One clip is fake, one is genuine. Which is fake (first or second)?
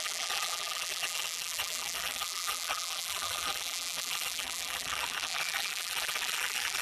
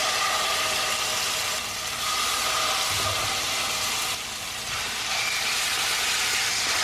first